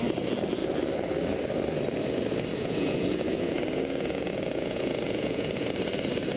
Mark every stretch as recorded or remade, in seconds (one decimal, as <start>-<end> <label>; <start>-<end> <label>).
0.0-2.5 recorded; 2.5-5.7 remade; 5.7-6.4 recorded